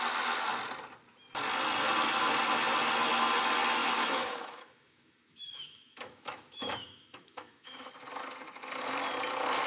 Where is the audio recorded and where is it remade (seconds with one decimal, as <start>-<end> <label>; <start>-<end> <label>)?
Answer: 0.0-3.8 recorded; 3.8-7.9 remade; 7.9-9.7 recorded